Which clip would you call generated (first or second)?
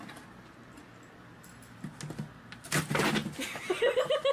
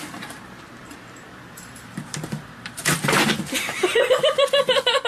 second